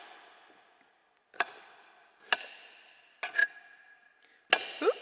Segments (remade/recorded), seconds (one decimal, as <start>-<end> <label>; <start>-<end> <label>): 0.0-3.4 recorded; 3.4-4.4 remade; 4.4-5.0 recorded